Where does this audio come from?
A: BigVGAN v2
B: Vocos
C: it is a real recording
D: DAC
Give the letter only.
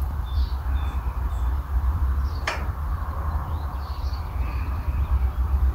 A